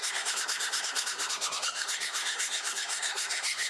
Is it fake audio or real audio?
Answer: fake